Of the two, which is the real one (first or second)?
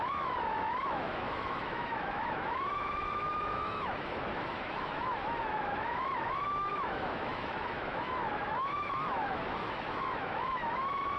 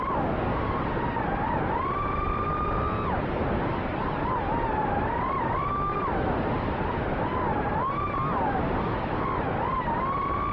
second